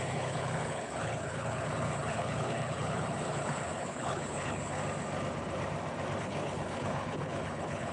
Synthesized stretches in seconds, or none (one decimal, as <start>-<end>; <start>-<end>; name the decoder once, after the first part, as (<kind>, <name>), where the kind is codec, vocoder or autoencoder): 0.0-4.8 (codec, HILCodec); 6.2-7.9